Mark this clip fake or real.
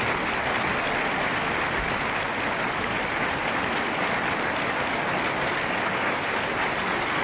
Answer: real